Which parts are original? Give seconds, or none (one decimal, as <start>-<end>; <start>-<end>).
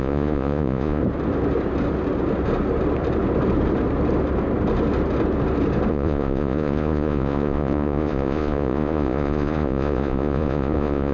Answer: 1.0-5.9